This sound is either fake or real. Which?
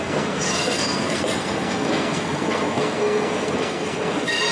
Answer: fake